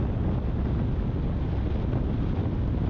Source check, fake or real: real